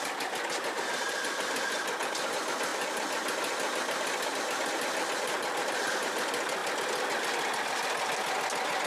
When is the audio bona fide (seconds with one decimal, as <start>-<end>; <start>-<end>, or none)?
0.0-8.9